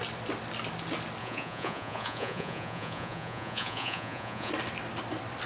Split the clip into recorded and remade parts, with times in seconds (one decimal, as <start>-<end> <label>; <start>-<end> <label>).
0.0-1.2 recorded; 1.2-4.5 remade; 4.5-5.5 recorded

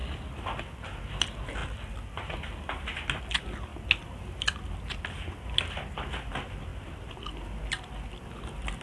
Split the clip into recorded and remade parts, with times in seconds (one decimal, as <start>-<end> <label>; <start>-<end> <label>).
0.0-8.8 recorded

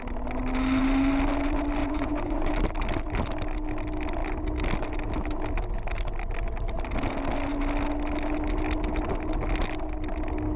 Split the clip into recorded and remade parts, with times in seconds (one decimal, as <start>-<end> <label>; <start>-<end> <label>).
0.0-1.8 recorded; 1.8-2.5 remade; 2.5-10.6 recorded

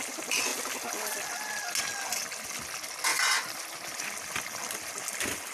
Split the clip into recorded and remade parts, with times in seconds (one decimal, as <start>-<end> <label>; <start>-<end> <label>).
0.0-5.5 recorded

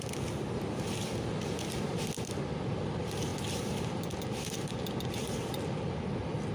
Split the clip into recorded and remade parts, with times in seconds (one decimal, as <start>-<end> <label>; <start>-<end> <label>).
0.0-6.5 recorded